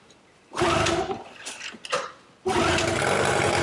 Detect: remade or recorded recorded